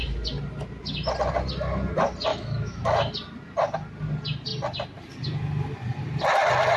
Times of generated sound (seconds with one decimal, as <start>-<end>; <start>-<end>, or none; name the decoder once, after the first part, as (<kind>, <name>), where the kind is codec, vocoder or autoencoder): 2.3-2.8 (autoencoder, DAC-VAE)